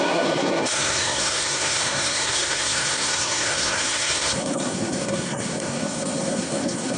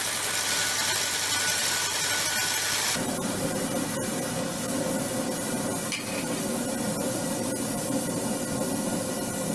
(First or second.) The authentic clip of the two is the second